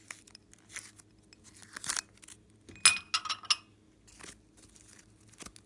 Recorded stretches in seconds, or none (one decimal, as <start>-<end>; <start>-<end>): 0.0-5.7